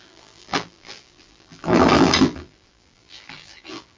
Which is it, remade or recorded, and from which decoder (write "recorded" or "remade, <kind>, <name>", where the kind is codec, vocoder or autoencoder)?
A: remade, vocoder, BigVGAN v2